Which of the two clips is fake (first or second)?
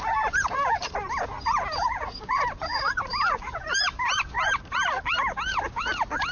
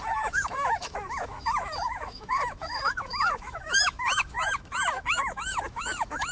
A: second